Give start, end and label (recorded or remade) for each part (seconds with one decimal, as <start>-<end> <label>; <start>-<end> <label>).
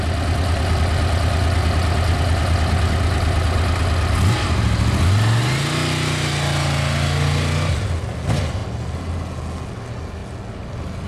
0.0-11.1 recorded